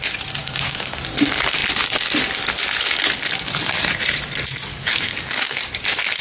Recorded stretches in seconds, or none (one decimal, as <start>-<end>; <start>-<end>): 0.0-0.4; 1.0-4.7; 5.6-6.2

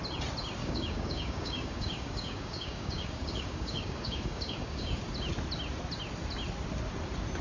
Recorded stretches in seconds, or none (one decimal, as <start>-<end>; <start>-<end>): 0.0-0.6; 5.0-7.4

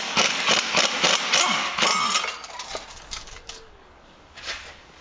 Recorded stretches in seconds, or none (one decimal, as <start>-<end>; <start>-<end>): 0.5-1.5; 1.9-2.9

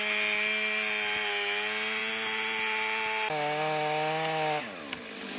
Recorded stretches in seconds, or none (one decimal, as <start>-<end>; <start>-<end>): 0.0-5.4

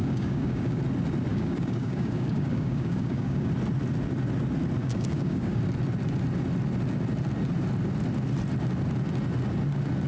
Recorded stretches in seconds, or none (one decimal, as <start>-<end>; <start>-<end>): 0.8-1.3; 3.5-4.8; 5.6-10.1

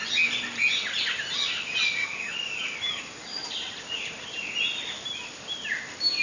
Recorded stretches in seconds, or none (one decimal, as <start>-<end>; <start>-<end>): 0.0-2.0; 3.0-6.2